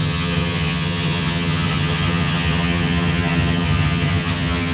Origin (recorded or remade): remade